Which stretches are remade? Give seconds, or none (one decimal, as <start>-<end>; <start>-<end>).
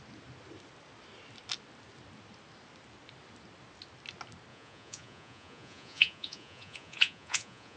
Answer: 4.5-7.8